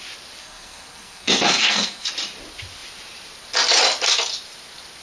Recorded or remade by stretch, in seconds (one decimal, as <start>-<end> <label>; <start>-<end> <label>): 0.0-0.4 recorded; 0.4-2.1 remade; 2.1-5.0 recorded